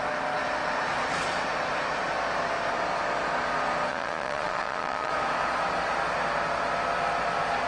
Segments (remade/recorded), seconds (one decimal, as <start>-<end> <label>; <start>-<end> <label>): 0.0-3.9 recorded; 3.9-5.1 remade; 5.1-7.7 recorded